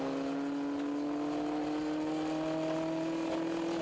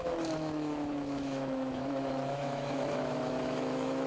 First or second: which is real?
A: first